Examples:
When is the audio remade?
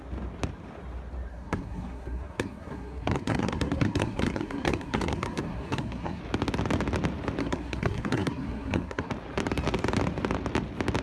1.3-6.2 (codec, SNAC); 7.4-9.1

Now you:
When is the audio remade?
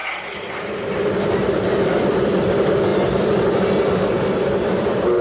none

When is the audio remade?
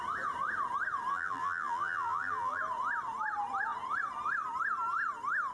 1.1-2.6 (vocoder, BigVGAN v2)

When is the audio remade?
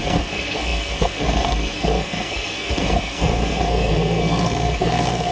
0.0-5.3 (codec, SNAC)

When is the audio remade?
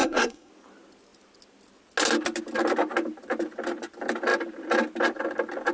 0.0-0.5 (codec, SNAC)